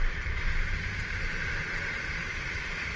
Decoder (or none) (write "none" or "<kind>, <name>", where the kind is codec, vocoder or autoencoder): none